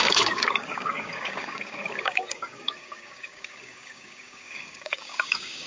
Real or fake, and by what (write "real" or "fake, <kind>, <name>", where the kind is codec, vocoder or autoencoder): fake, codec, DAC